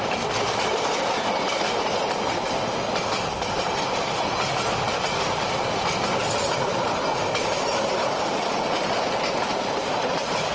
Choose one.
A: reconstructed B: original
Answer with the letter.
B